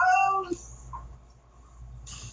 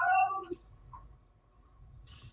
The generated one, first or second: second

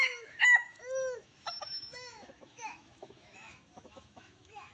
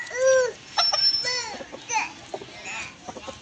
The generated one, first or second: first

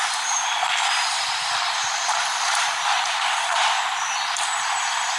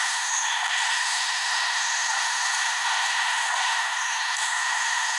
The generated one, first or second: second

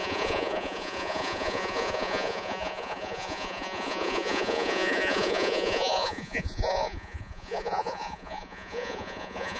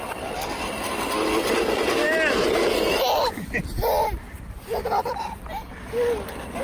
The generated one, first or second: first